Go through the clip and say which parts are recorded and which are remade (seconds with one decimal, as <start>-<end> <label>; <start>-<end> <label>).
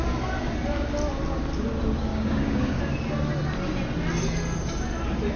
0.0-2.1 recorded; 2.1-2.8 remade; 2.8-5.4 recorded